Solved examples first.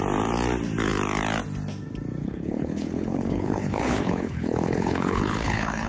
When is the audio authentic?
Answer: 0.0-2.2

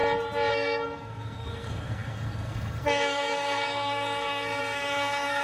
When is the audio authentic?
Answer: 0.0-0.5

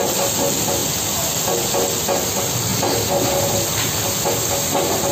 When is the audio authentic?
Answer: 0.0-5.1

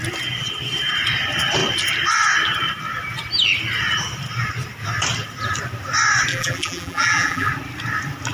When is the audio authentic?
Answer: 0.0-6.3; 7.5-8.3

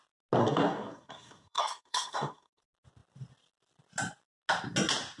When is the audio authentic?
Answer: 0.0-0.4; 2.6-5.2

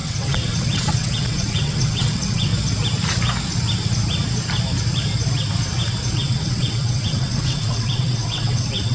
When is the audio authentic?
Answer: 2.5-6.1